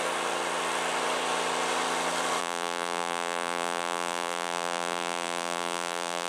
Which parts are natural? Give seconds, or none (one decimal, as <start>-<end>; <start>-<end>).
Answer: 0.0-2.4